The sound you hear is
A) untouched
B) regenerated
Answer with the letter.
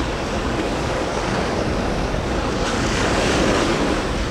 B